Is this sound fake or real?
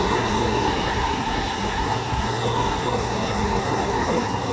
fake